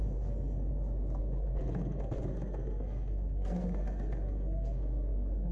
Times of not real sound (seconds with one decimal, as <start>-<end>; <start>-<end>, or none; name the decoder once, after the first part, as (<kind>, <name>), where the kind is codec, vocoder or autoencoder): 0.0-0.7 (codec, SNAC); 1.2-5.5